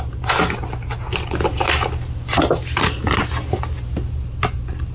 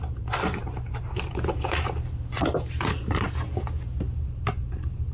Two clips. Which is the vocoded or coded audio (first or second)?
second